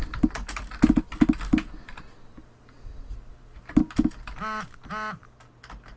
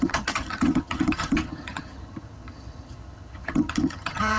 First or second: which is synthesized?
second